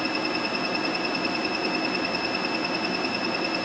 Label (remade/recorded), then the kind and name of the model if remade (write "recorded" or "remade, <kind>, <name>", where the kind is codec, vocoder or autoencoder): recorded